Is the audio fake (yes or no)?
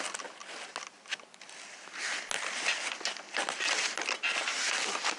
no